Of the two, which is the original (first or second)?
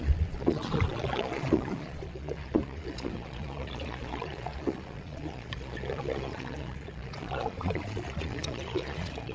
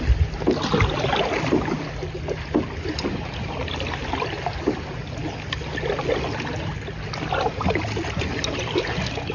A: second